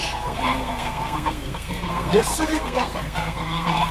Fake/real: fake